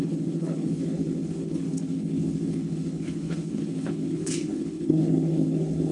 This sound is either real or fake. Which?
fake